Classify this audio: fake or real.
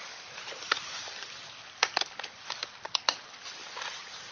real